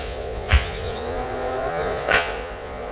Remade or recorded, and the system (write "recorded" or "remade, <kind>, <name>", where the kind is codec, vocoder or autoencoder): remade, vocoder, Vocos